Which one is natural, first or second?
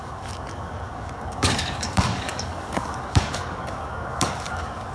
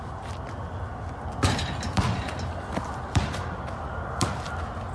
second